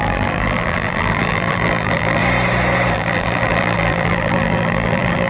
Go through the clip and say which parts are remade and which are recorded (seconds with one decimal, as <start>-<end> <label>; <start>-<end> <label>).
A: 0.0-2.2 remade; 2.2-2.9 recorded; 2.9-5.3 remade